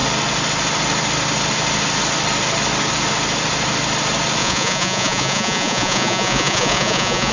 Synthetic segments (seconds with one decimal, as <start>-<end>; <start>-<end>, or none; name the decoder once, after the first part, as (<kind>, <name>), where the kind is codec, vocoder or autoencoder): 4.4-7.3 (vocoder, Vocos)